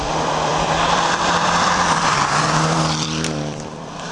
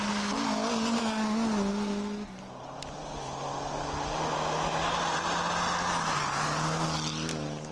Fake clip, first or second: first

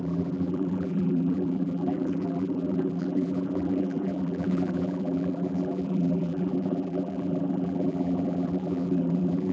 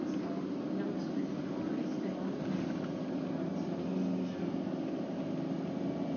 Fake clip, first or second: first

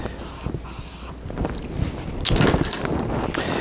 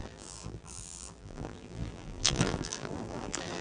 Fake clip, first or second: second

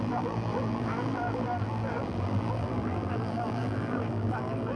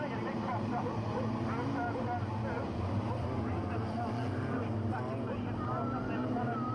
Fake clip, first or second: first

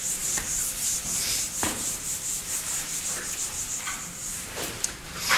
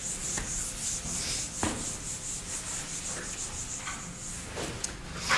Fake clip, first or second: first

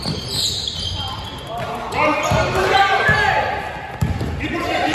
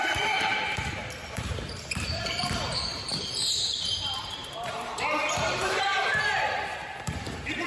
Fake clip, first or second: second